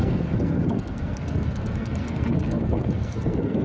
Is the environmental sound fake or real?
fake